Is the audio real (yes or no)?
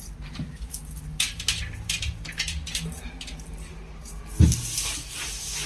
yes